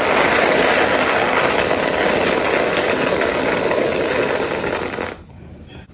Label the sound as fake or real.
real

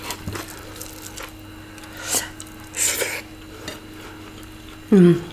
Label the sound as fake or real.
real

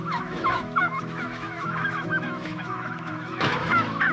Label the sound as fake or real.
fake